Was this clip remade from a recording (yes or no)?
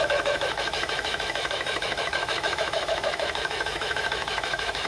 yes